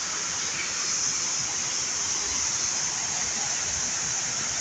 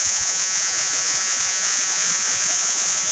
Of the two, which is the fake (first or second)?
second